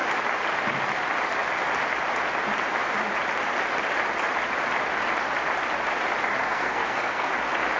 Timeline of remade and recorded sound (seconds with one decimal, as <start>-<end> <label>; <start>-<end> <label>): 0.0-6.3 recorded; 6.3-7.3 remade; 7.3-7.8 recorded